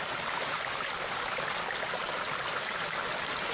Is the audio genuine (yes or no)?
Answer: yes